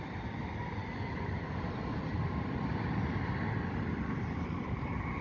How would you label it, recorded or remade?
recorded